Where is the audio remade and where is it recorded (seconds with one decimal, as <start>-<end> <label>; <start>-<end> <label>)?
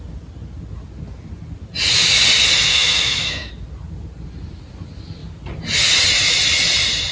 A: 0.0-2.7 recorded; 2.7-3.5 remade; 3.5-7.1 recorded